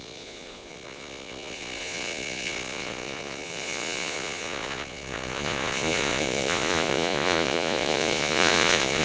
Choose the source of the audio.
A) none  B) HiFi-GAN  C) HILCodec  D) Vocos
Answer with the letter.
D